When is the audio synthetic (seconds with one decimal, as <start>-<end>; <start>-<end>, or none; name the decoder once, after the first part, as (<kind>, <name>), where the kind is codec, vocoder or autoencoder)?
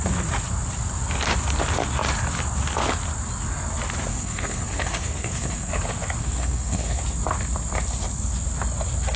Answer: 4.1-5.7 (codec, SNAC); 6.2-7.0